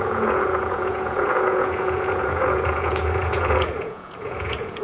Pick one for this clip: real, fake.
fake